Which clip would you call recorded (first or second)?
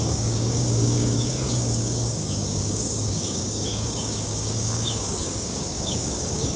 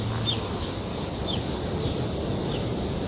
second